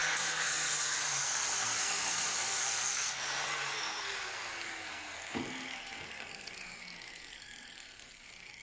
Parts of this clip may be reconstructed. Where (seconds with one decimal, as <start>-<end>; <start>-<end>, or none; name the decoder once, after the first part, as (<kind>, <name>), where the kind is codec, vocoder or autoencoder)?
0.0-8.6 (codec, SNAC)

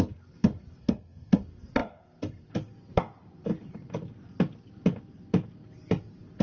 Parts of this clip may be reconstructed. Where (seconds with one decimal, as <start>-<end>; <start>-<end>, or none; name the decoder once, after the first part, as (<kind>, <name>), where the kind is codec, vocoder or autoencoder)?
0.8-1.4 (codec, SNAC)

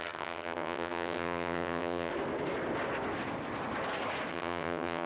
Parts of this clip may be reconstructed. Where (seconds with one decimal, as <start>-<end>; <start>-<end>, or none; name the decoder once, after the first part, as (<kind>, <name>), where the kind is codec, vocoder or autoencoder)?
0.0-2.1 (vocoder, HiFi-GAN); 4.3-5.1

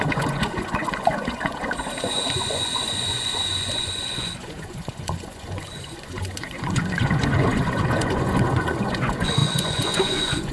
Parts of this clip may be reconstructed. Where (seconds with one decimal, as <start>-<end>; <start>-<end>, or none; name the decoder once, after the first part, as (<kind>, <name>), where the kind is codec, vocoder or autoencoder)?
0.0-10.5 (vocoder, Vocos)

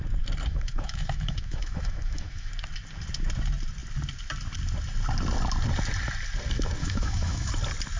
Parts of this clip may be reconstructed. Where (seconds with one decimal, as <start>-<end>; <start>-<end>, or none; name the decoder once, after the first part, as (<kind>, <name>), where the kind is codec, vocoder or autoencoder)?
0.5-2.5 (autoencoder, DAC-VAE); 6.8-7.5

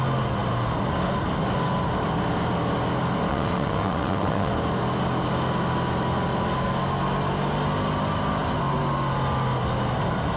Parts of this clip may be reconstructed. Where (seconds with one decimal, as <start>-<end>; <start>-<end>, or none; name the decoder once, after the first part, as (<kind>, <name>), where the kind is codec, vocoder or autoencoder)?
3.3-4.5 (vocoder, WaveNeXt)

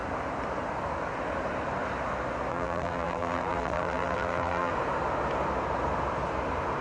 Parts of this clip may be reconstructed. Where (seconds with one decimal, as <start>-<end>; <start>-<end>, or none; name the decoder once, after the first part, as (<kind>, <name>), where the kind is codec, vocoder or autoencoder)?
2.5-4.7 (vocoder, BigVGAN v2)

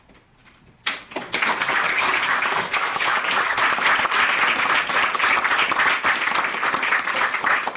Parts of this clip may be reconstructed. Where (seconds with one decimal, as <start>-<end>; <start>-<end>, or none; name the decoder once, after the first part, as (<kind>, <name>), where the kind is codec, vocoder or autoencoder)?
1.7-3.6 (codec, DAC)